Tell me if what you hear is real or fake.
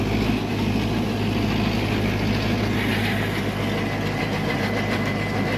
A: real